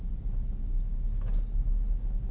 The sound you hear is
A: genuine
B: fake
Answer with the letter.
A